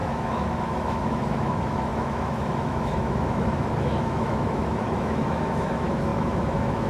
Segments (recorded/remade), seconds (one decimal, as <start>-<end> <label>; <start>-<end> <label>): 0.0-6.9 remade